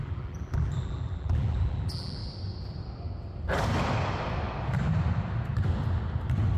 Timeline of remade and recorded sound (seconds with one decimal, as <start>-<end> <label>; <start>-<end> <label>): 0.0-2.2 remade; 2.2-6.6 recorded